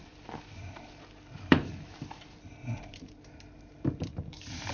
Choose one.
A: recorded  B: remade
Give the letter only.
B